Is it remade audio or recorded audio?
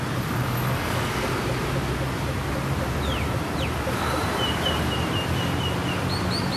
recorded